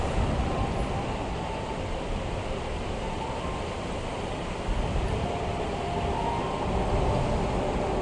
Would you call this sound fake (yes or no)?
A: no